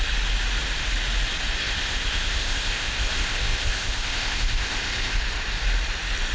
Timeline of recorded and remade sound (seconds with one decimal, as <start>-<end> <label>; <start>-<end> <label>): 0.0-1.6 recorded; 1.6-5.2 remade; 5.2-6.3 recorded